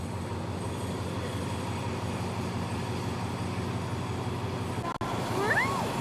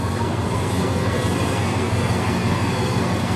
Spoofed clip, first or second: second